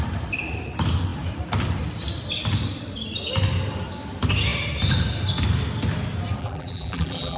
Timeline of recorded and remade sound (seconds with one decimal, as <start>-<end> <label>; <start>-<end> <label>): 0.0-6.4 recorded; 6.4-7.4 remade